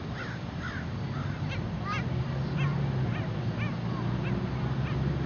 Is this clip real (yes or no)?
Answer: yes